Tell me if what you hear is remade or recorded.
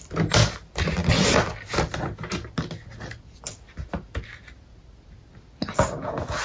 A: recorded